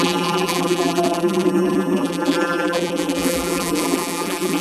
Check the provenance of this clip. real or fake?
fake